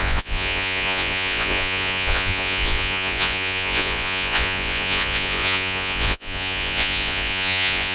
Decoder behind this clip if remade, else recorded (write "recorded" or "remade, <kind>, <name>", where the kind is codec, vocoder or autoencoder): remade, vocoder, Vocos